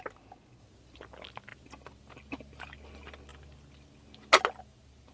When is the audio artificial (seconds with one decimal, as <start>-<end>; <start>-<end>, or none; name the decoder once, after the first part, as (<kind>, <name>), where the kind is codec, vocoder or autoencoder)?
none